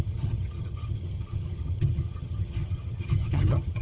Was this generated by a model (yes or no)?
yes